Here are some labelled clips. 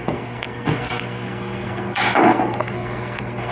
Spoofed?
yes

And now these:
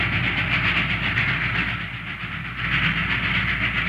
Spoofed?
no